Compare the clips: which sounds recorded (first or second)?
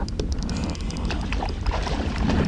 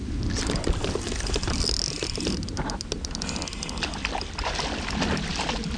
second